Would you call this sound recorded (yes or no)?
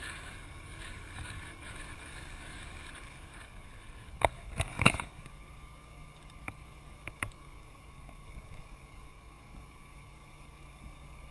no